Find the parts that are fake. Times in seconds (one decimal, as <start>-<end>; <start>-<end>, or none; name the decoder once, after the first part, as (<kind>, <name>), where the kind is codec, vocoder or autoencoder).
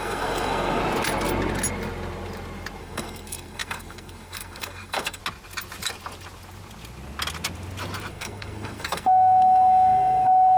0.0-0.8 (codec, SNAC); 2.8-5.2; 8.1-10.6